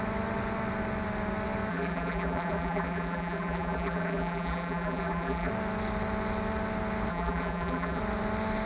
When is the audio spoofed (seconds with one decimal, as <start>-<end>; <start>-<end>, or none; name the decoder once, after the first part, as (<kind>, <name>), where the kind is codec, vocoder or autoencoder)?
1.7-5.5 (vocoder, BigVGAN v2); 7.1-8.0